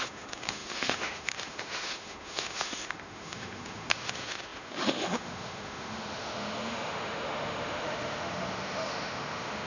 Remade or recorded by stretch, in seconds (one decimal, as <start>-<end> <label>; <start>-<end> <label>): 0.0-9.7 remade